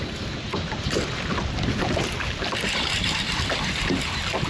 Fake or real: real